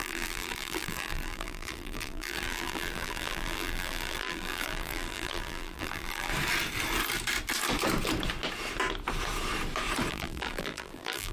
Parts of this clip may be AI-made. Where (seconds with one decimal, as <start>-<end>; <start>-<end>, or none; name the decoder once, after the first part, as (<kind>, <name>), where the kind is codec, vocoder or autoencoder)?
0.0-6.3 (vocoder, BigVGAN v2); 10.1-11.3